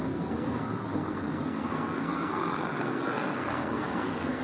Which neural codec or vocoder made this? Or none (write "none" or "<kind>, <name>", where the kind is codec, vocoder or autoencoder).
codec, SNAC